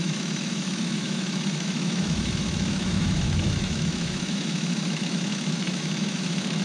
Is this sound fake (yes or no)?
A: yes